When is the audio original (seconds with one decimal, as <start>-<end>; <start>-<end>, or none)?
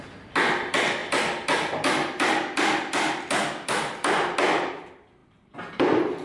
0.0-6.2